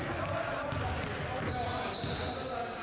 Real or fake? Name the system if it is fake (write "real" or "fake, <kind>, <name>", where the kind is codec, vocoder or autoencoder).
real